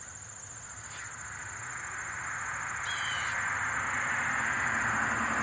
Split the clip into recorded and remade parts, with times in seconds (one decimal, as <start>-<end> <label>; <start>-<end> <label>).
0.0-5.4 recorded